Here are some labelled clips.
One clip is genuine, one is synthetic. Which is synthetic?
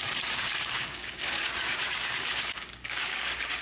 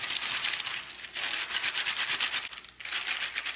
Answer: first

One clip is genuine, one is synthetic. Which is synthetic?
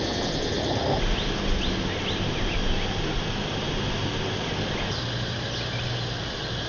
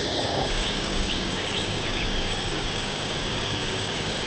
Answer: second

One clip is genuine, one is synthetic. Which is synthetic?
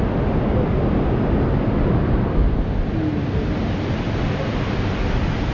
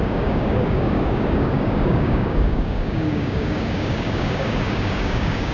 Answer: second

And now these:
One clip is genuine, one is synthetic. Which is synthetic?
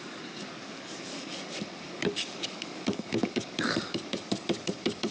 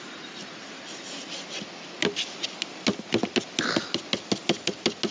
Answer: first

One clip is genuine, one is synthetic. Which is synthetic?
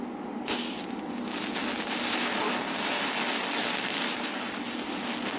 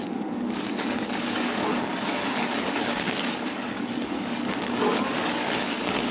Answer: second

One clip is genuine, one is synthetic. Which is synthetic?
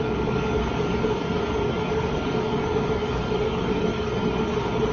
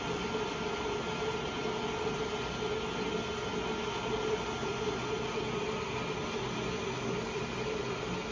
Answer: first